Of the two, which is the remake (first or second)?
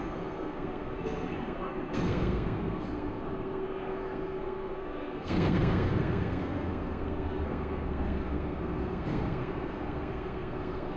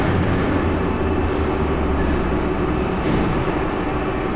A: first